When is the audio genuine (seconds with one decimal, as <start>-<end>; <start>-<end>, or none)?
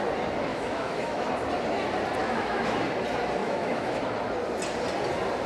0.0-0.5; 1.3-2.2; 2.8-3.4; 4.0-5.5